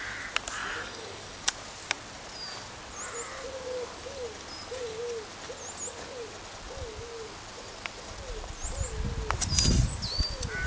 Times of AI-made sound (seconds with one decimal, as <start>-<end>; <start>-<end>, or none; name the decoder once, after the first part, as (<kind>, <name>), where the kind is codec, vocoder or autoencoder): 0.6-1.5 (codec, DAC)